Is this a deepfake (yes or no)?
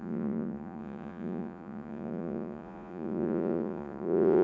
yes